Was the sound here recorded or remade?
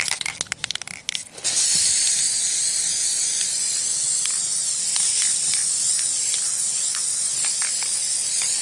recorded